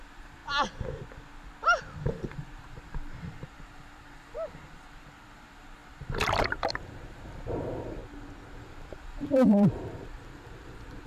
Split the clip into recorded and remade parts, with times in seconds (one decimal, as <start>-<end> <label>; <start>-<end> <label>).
0.0-0.4 remade; 0.4-2.1 recorded; 2.1-8.0 remade; 8.0-8.6 recorded; 8.6-11.1 remade